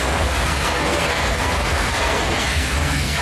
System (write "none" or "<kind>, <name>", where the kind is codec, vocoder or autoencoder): codec, SNAC